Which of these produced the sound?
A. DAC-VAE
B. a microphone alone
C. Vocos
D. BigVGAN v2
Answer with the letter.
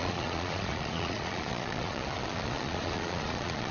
C